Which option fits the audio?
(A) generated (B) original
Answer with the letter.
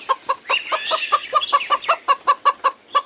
B